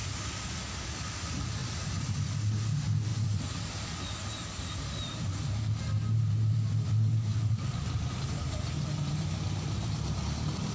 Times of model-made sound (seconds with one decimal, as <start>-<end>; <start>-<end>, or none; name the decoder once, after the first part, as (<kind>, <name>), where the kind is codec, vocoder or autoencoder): 1.6-2.1 (vocoder, BigVGAN v2); 3.1-4.0; 7.3-10.2